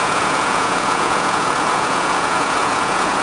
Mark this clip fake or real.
fake